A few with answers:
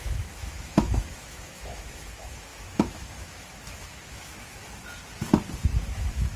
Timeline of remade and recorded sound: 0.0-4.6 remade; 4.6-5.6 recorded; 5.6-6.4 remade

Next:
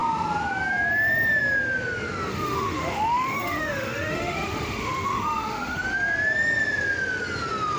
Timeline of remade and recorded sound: 0.0-2.3 recorded; 2.3-5.8 remade; 5.8-7.8 recorded

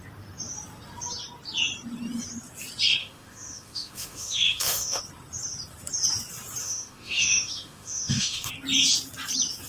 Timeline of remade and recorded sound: 0.0-3.0 recorded; 3.0-5.0 remade; 5.0-6.6 recorded; 6.6-8.5 remade; 8.5-9.7 recorded

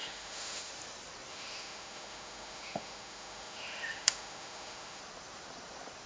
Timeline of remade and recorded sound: 0.0-0.7 remade; 0.7-1.3 recorded; 1.3-5.0 remade; 5.0-6.1 recorded

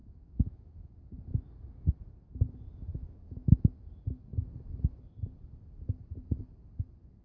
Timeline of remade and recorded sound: 0.0-0.9 remade; 0.9-2.9 recorded; 2.9-3.6 remade; 3.6-7.2 recorded

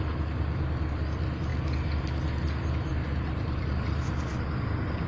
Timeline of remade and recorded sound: 0.0-5.1 recorded